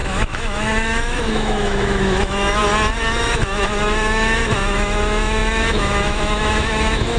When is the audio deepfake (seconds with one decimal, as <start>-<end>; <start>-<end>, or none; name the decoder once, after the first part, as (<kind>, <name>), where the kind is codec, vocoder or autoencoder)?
0.0-2.6 (autoencoder, DAC-VAE); 3.2-7.2